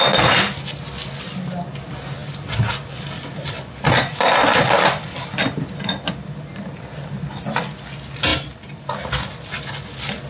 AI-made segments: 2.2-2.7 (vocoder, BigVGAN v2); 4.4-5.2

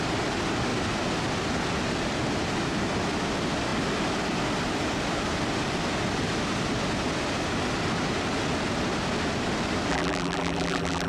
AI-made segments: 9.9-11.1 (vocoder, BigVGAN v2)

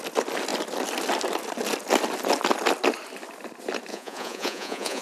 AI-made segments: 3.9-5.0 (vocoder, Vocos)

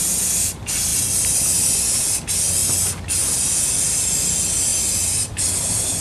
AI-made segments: 0.9-1.7 (vocoder, BigVGAN v2)

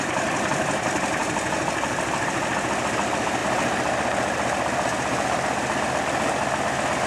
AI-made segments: none

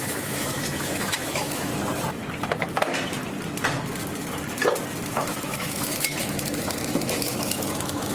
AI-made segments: 0.0-1.7 (autoencoder, DAC-VAE); 5.1-8.1